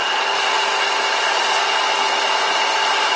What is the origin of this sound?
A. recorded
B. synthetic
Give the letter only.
A